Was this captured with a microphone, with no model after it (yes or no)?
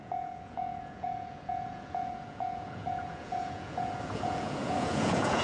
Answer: no